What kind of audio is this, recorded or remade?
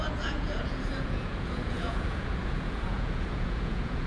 remade